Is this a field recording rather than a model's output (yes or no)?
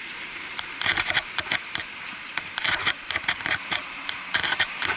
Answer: no